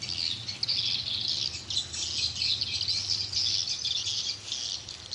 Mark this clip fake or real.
real